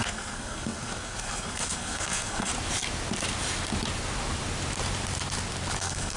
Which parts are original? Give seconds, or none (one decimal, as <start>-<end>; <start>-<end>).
2.5-5.8

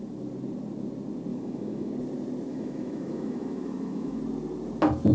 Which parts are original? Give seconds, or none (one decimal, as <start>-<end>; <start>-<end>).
0.0-1.3; 1.9-2.5; 4.2-5.1